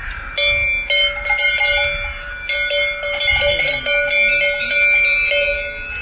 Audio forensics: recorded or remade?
recorded